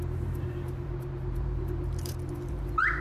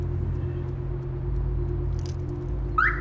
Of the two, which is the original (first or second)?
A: second